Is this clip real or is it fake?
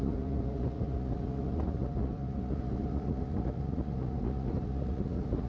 fake